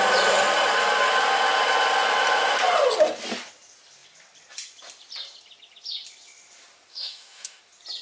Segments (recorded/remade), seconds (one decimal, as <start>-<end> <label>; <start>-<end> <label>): 0.0-6.9 recorded; 6.9-7.6 remade; 7.6-8.0 recorded